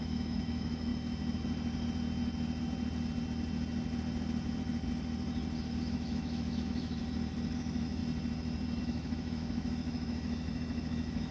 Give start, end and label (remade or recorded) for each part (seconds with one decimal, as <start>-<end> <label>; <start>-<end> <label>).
0.0-0.9 remade; 0.9-5.9 recorded; 5.9-7.0 remade; 7.0-7.6 recorded; 7.6-8.0 remade; 8.0-8.8 recorded; 8.8-11.3 remade